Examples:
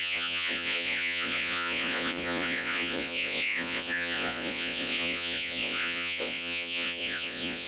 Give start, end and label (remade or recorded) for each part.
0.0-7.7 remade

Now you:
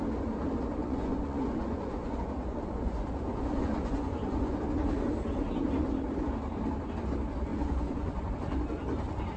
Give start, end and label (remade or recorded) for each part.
0.0-0.8 recorded; 0.8-4.6 remade; 4.6-7.5 recorded; 7.5-8.3 remade; 8.3-9.4 recorded

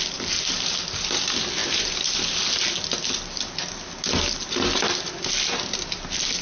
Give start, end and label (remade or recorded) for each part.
0.0-6.4 recorded